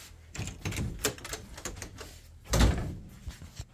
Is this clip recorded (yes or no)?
yes